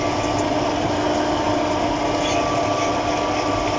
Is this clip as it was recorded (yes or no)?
yes